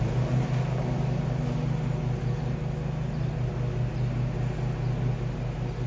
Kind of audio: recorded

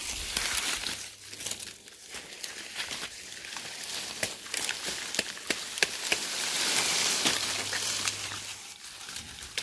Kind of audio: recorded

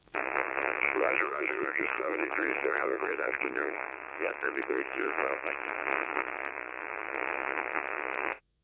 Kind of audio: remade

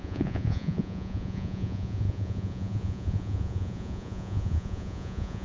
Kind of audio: remade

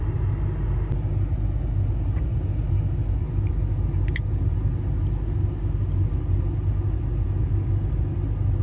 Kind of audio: recorded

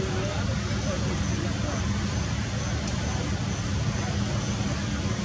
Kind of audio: recorded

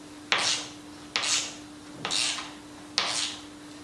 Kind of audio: recorded